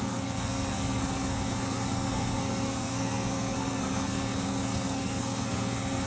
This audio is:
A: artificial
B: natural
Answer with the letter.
A